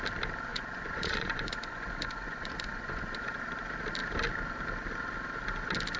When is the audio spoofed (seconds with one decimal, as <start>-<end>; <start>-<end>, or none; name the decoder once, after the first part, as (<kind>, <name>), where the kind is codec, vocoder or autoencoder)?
0.5-3.4 (vocoder, Vocos)